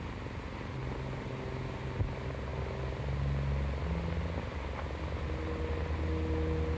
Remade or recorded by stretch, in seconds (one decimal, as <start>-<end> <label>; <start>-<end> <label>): 0.0-6.8 recorded